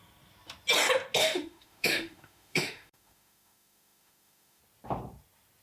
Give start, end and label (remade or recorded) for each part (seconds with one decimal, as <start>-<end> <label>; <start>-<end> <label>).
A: 0.0-1.2 recorded; 1.2-4.6 remade; 4.6-5.6 recorded